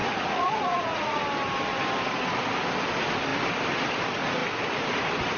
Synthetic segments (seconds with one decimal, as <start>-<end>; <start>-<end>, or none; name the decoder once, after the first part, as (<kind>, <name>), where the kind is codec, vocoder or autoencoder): 0.0-1.2 (vocoder, Vocos)